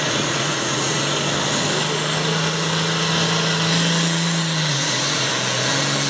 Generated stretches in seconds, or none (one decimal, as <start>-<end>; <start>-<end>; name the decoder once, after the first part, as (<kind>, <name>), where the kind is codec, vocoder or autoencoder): 0.0-1.0 (vocoder, Vocos); 4.7-5.3